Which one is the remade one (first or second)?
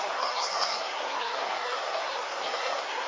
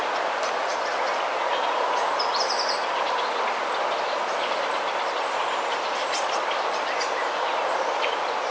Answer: first